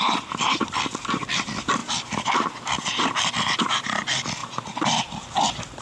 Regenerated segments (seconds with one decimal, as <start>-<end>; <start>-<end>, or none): none